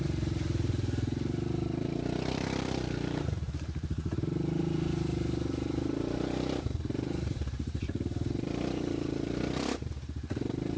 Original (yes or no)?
no